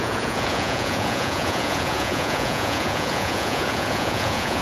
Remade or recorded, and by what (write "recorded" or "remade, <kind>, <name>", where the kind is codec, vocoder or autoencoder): remade, vocoder, Vocos